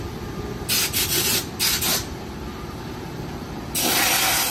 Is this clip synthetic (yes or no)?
no